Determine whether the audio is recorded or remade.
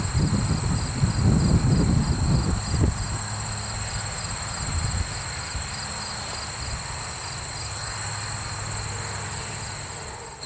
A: recorded